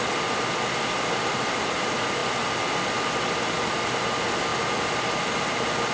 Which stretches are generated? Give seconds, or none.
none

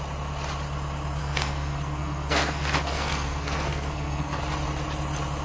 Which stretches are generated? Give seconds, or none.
1.2-4.4 (codec, SNAC)

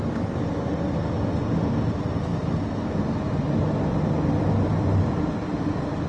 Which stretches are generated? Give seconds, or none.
none